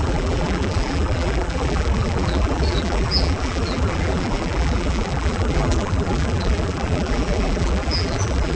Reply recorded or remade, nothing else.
remade